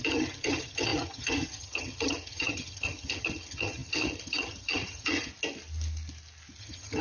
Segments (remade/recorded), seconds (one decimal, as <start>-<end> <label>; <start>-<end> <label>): 0.0-5.3 remade; 5.3-6.6 recorded; 6.6-7.0 remade